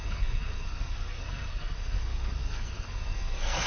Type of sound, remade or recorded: remade